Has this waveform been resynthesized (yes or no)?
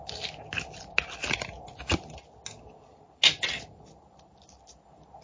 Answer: no